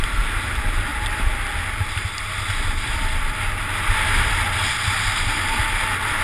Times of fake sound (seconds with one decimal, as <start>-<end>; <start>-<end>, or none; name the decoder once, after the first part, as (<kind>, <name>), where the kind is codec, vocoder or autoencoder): none